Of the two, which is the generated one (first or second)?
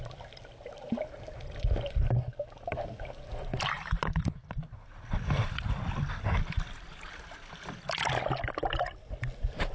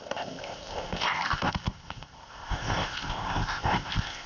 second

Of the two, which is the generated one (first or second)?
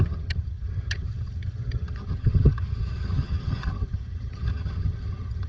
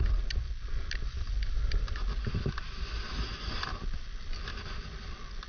first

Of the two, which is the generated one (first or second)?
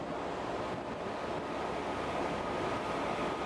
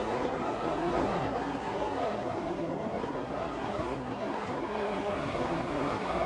second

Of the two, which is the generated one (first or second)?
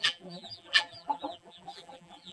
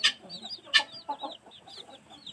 first